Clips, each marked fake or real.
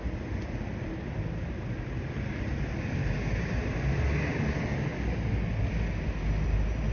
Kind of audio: real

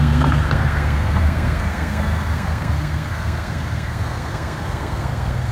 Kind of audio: fake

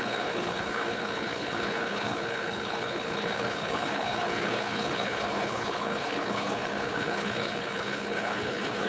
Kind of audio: fake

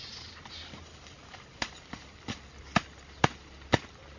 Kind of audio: real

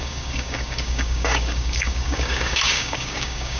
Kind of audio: fake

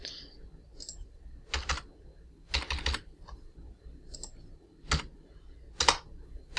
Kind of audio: real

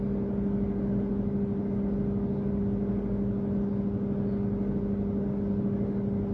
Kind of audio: real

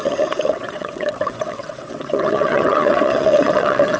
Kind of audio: fake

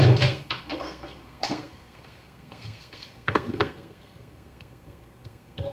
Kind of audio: fake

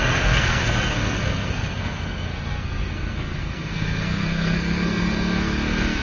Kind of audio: fake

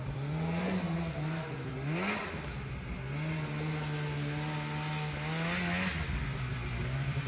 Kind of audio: real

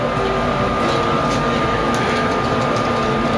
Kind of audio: real